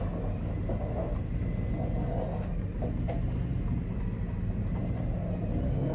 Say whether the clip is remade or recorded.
recorded